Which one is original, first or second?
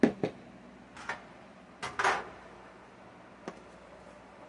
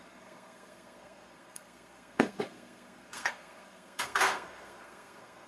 first